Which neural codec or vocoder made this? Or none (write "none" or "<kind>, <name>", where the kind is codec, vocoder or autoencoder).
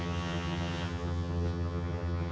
vocoder, HiFi-GAN